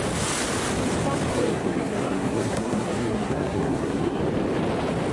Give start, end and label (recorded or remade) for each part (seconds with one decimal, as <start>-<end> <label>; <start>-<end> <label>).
0.0-1.3 recorded; 1.3-4.2 remade; 4.2-5.1 recorded